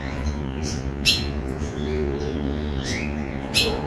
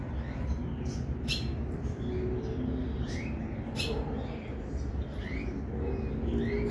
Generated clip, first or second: first